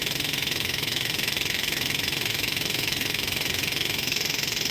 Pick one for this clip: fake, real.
fake